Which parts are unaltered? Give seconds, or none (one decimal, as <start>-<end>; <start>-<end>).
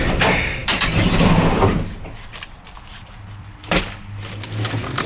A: 0.0-0.6; 3.7-5.1